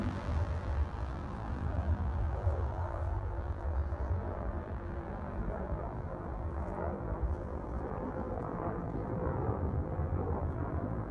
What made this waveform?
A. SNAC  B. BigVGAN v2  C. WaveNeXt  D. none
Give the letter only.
B